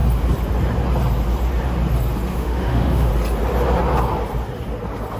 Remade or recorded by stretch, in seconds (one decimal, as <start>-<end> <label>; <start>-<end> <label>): 0.0-2.3 recorded; 2.3-3.1 remade; 3.1-5.2 recorded